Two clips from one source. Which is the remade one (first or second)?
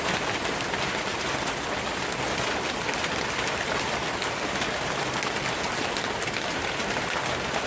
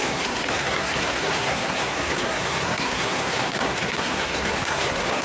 second